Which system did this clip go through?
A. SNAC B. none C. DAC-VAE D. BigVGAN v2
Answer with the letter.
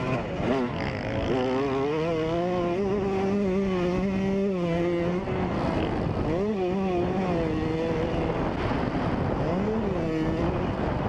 B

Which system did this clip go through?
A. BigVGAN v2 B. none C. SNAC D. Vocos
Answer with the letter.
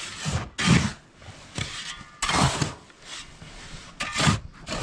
B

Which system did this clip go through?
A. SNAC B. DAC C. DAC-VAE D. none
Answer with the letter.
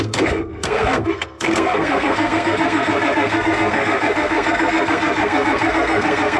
A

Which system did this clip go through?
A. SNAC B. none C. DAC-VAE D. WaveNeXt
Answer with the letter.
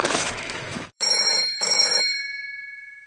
C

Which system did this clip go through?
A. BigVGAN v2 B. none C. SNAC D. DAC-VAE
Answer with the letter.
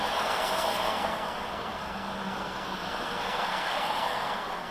C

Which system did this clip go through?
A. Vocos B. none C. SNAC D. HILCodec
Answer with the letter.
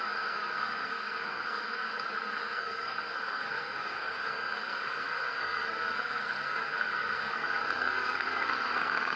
C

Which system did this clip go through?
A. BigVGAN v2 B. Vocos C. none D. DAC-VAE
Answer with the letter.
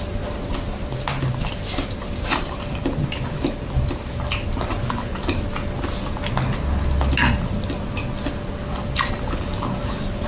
C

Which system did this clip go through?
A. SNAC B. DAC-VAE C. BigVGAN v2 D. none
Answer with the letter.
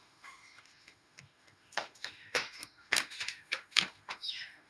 B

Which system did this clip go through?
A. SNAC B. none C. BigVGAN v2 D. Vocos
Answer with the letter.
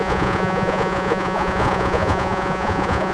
D